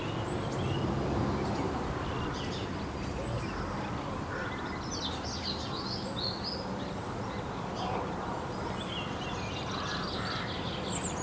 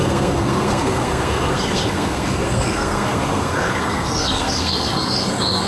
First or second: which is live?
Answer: first